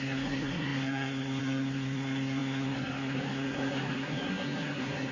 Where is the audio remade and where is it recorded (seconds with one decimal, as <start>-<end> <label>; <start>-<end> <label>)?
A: 0.0-5.1 remade